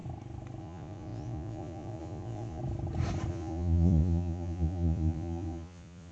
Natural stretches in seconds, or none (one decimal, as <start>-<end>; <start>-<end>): 0.0-0.6; 2.6-3.3